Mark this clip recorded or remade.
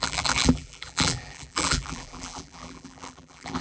remade